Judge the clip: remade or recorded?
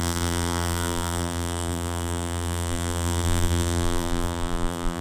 remade